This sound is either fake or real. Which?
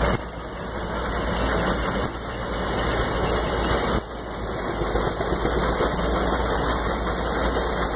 real